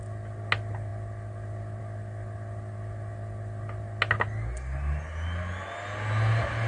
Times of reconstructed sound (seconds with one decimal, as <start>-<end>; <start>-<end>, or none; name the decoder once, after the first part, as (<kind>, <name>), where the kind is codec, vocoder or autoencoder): none